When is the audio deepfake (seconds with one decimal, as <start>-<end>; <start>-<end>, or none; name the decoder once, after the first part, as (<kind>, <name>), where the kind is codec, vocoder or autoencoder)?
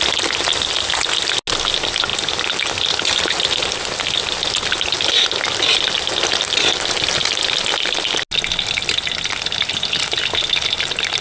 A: none